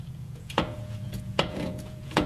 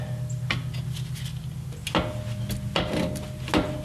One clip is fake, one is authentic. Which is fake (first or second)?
first